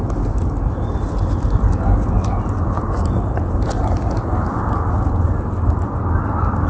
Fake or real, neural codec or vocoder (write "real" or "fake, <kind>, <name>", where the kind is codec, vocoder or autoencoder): real